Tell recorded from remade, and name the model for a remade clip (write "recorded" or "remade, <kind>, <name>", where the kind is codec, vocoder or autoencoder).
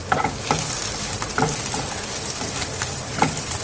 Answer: recorded